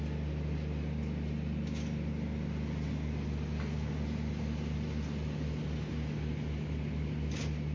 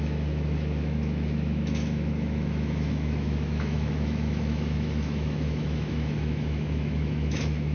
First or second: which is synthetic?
second